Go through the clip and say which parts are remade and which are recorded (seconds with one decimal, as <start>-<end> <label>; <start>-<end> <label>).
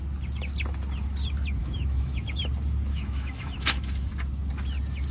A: 0.0-1.6 recorded; 1.6-2.4 remade; 2.4-2.9 recorded; 2.9-3.9 remade; 3.9-5.1 recorded